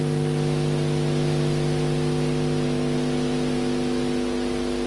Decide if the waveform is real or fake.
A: real